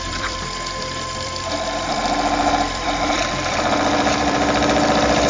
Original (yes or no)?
no